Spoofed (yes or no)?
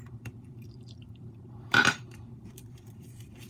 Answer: yes